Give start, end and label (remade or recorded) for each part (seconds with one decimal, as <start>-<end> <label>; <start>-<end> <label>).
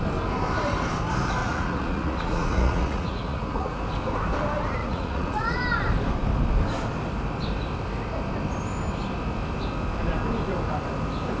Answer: 0.0-1.4 recorded; 1.4-3.8 remade; 3.8-4.8 recorded; 4.8-5.6 remade; 5.6-11.4 recorded